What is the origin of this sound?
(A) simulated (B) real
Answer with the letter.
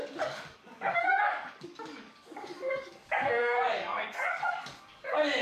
A